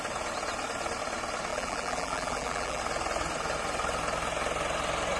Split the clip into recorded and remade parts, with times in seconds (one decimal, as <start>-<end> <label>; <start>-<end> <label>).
0.0-1.5 recorded; 1.5-2.8 remade; 2.8-5.2 recorded